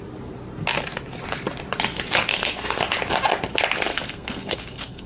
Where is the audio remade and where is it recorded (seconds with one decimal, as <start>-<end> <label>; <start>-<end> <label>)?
0.0-2.3 recorded; 2.3-2.8 remade; 2.8-3.9 recorded; 3.9-5.1 remade